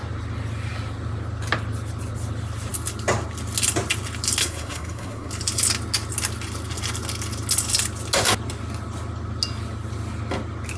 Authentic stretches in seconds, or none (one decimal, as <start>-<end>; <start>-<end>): 0.0-4.4; 5.3-10.8